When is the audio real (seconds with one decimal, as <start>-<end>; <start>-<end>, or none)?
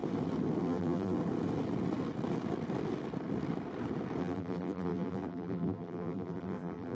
0.0-0.6; 1.2-4.2